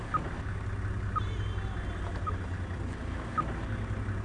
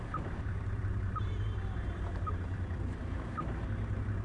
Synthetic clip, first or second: second